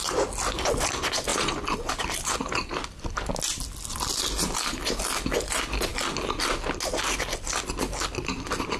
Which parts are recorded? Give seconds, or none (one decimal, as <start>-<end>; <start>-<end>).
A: 0.0-8.8